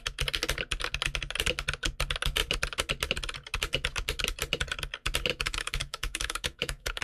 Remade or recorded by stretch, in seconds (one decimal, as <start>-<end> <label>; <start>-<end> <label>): 0.0-5.3 recorded; 5.3-7.0 remade